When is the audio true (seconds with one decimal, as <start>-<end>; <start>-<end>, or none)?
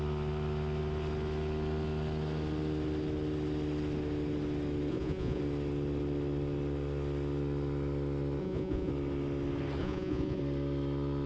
0.0-4.9; 5.4-8.4; 8.9-9.8; 10.4-11.3